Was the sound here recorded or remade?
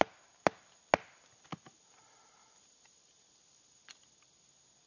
recorded